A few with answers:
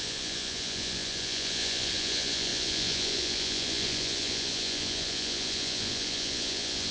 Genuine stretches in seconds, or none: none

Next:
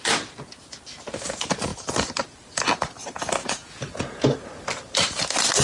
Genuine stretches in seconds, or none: 0.0-3.4; 4.2-5.6

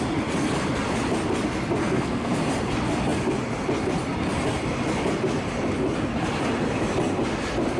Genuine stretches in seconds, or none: 0.0-1.8; 2.4-7.8